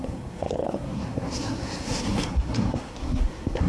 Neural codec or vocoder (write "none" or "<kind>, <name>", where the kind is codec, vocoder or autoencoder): codec, SNAC